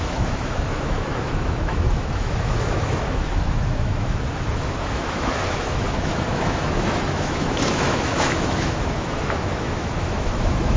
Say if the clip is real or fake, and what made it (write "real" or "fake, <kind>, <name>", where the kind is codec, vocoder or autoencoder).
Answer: fake, autoencoder, DAC-VAE